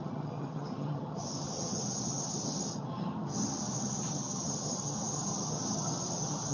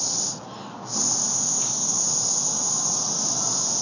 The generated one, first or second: first